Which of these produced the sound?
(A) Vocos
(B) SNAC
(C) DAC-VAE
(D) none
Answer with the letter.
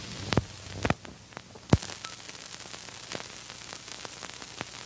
D